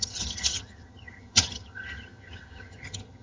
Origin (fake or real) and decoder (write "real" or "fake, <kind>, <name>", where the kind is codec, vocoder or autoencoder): fake, vocoder, HiFi-GAN